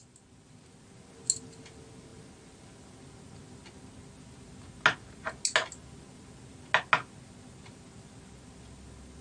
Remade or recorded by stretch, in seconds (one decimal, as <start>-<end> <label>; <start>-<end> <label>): 0.0-9.2 recorded